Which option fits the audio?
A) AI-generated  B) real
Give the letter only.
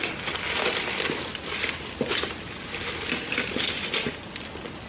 B